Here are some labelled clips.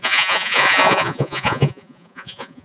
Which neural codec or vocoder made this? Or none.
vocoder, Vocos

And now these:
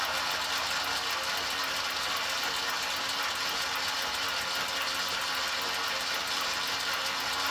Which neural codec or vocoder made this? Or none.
none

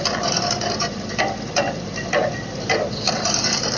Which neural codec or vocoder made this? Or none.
vocoder, BigVGAN v2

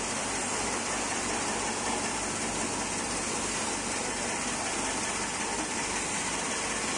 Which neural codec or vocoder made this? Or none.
none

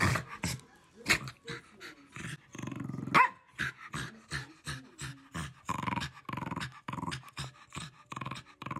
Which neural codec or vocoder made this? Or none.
none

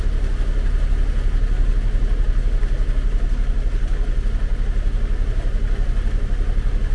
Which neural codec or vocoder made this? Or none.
none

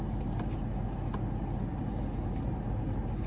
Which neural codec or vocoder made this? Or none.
none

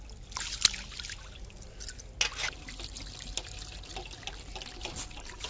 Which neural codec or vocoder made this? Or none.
none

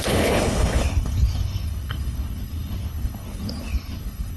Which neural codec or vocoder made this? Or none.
codec, HILCodec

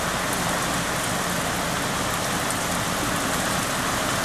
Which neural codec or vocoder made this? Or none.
none